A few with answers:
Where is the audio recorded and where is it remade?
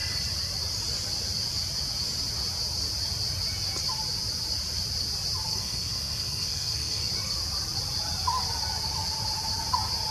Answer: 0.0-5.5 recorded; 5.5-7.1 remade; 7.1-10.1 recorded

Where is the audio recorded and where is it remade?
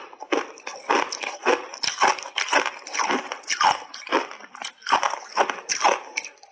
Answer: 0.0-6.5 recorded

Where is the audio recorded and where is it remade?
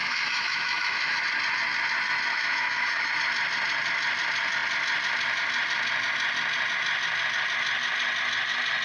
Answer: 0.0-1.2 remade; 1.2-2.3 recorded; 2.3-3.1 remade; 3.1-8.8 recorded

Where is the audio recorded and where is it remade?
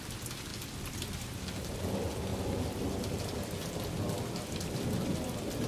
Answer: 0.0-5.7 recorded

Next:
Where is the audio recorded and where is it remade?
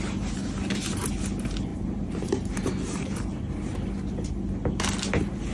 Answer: 0.0-1.7 recorded; 1.7-3.5 remade; 3.5-5.5 recorded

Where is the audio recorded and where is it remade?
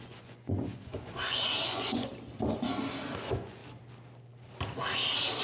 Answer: 0.0-2.1 remade; 2.1-3.2 recorded; 3.2-3.6 remade; 3.6-5.4 recorded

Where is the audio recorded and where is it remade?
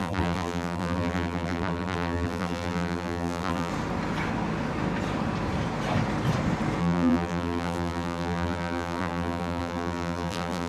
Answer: 0.0-3.7 remade; 3.7-6.8 recorded; 6.8-10.7 remade